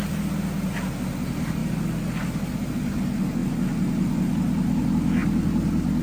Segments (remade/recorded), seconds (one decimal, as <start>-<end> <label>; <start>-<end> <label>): 0.0-6.0 recorded